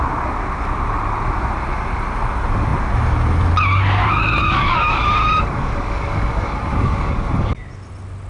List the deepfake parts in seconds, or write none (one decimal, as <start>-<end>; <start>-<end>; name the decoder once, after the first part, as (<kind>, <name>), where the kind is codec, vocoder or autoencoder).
4.4-7.5 (codec, DAC)